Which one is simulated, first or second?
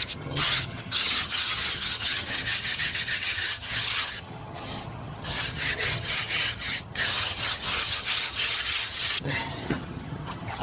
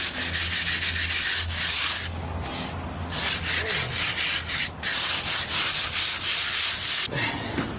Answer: first